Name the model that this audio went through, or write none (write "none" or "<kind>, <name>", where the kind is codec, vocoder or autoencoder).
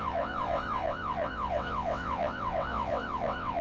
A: vocoder, WaveNeXt